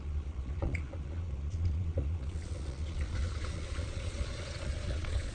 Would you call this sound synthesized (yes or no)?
yes